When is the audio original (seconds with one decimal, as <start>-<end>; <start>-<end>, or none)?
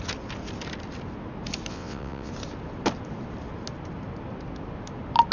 0.0-1.7; 2.3-5.3